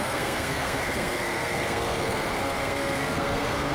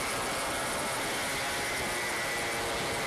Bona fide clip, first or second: second